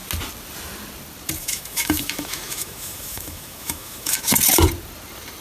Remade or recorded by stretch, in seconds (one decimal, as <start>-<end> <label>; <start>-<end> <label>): 0.0-1.4 recorded; 1.4-4.3 remade; 4.3-5.4 recorded

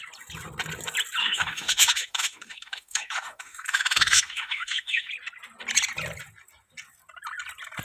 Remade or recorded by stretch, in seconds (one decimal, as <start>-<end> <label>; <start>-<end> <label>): 0.0-1.2 recorded; 1.2-5.1 remade; 5.1-7.8 recorded

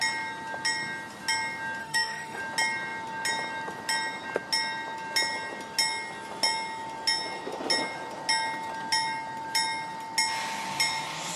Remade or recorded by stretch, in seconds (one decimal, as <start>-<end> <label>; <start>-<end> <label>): 0.0-1.8 recorded; 1.8-2.4 remade; 2.4-11.4 recorded

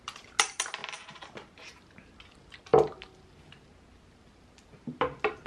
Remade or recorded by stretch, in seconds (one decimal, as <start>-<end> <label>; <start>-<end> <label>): 0.0-5.5 recorded

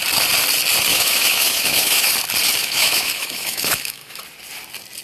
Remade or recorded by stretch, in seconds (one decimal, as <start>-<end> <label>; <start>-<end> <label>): 0.0-0.9 recorded; 0.9-2.1 remade; 2.1-2.6 recorded; 2.6-4.2 remade; 4.2-5.0 recorded

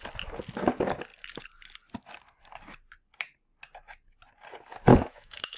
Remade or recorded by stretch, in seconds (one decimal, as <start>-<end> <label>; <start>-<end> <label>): 0.0-4.9 recorded; 4.9-5.6 remade